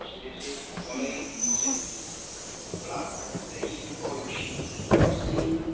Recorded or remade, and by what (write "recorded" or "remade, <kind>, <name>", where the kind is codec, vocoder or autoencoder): recorded